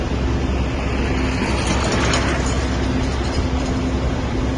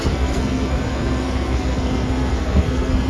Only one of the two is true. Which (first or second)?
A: first